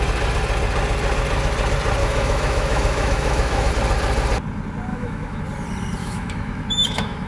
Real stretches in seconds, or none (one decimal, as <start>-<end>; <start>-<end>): 0.0-2.0; 3.7-4.9; 5.4-6.0